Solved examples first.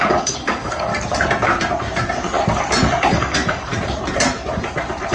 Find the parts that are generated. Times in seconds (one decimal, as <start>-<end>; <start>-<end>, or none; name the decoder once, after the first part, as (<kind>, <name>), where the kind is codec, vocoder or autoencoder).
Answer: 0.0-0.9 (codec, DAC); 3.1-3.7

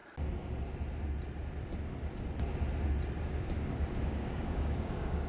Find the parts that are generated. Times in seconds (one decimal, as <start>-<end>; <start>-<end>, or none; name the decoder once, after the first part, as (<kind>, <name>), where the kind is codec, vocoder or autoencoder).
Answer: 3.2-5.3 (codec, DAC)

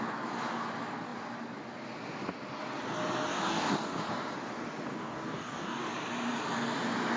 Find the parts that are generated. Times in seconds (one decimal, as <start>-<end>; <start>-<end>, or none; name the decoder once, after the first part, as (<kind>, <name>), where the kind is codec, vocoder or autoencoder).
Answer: 3.3-4.0 (codec, DAC); 4.9-5.9

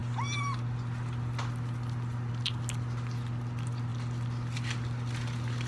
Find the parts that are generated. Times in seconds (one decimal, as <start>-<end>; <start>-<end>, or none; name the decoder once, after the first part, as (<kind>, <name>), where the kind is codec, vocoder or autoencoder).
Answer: none